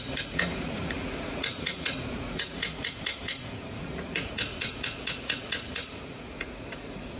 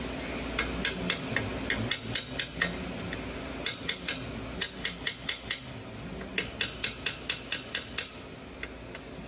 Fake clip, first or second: first